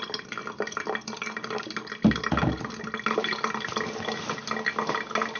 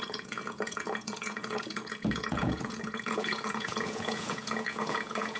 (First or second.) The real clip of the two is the first